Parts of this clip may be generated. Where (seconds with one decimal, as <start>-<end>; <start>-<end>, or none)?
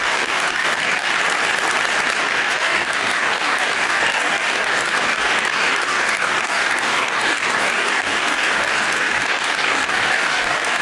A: 0.0-1.1; 2.2-10.8